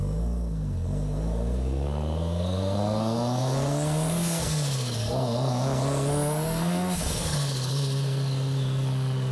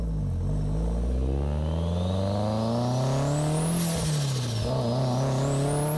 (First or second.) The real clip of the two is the second